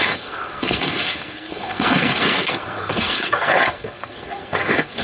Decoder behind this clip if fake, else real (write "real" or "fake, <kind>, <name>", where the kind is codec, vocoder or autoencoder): fake, codec, SNAC